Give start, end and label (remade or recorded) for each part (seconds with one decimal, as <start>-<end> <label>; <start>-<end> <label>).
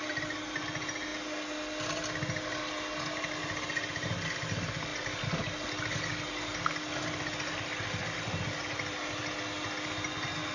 0.0-10.5 recorded